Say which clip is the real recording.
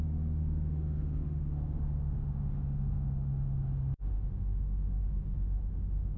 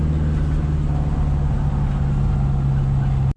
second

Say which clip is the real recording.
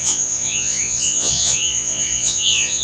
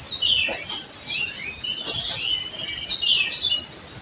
second